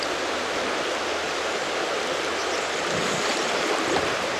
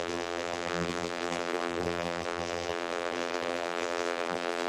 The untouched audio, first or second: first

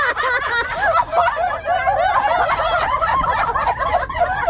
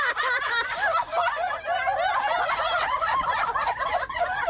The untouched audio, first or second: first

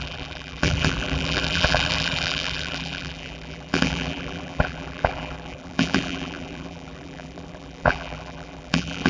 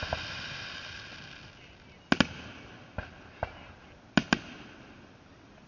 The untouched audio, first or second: second